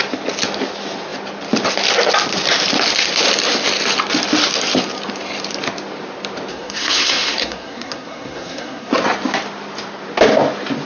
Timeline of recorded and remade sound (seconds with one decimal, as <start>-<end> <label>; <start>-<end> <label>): 0.0-6.5 recorded; 6.5-8.9 remade; 8.9-10.9 recorded